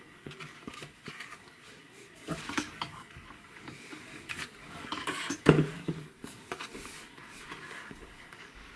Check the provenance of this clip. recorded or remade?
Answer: remade